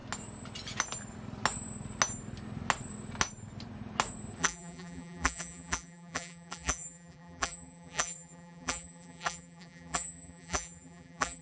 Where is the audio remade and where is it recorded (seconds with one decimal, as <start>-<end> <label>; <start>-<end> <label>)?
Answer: 0.0-4.4 recorded; 4.4-11.4 remade